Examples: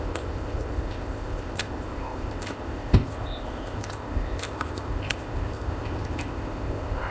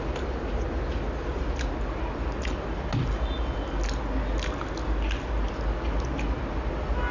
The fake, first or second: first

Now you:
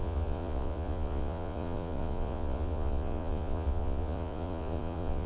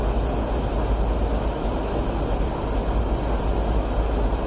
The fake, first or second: first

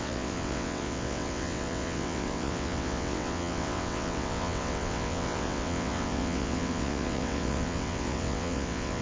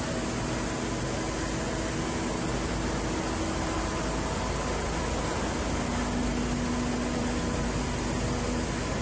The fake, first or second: first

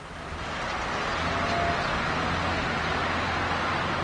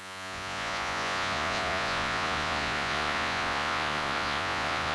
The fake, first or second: second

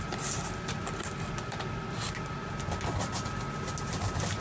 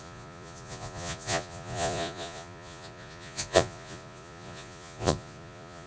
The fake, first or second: second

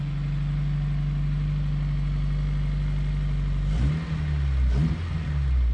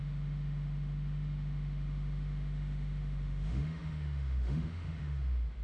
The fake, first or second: second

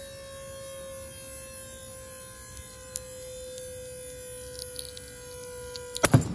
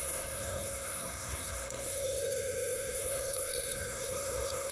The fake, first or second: second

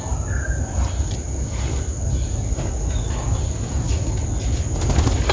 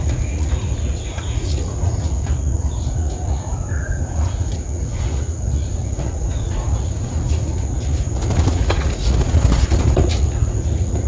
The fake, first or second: second